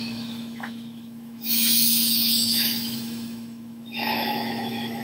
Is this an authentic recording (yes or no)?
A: no